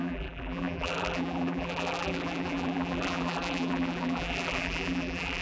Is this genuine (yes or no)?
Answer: no